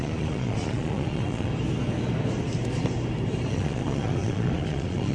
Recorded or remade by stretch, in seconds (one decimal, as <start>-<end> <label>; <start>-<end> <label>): 0.0-1.5 remade; 1.5-3.5 recorded; 3.5-5.1 remade